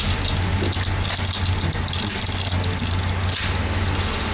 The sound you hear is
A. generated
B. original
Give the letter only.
B